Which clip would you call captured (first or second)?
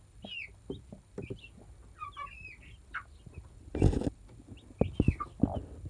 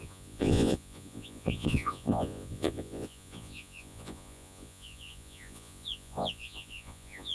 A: first